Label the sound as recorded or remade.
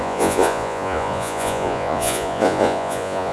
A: remade